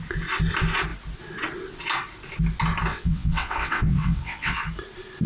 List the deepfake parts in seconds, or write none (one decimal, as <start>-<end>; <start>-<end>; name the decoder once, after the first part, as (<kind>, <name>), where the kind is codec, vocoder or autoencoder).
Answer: 2.9-4.6 (vocoder, WaveNeXt)

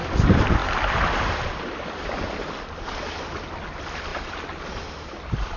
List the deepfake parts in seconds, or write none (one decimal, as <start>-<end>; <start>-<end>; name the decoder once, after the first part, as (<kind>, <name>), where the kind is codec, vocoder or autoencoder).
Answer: none

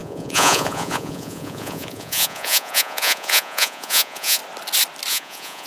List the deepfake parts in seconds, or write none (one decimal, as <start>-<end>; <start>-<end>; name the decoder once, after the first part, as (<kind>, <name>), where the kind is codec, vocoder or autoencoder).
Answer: 0.0-4.4 (vocoder, Vocos); 5.1-5.7

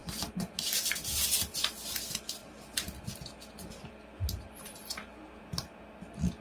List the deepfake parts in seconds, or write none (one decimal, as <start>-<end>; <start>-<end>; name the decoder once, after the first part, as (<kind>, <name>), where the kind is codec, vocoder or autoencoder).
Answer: none

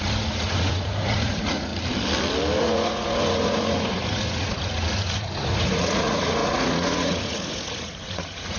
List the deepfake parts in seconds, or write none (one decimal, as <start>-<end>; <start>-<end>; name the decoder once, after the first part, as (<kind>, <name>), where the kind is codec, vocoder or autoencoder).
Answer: 0.0-1.7 (vocoder, Vocos); 2.6-8.6

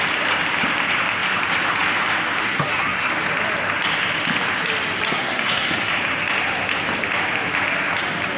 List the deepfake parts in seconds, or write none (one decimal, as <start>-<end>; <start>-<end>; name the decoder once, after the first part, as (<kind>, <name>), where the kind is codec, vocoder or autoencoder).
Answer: 2.4-3.1 (codec, SNAC); 5.1-5.9